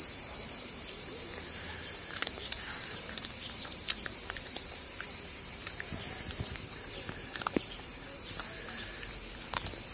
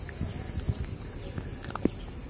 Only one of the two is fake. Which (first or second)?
first